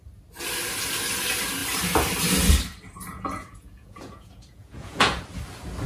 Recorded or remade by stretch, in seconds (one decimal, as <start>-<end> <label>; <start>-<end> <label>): 0.0-3.1 recorded; 3.1-5.2 remade; 5.2-5.9 recorded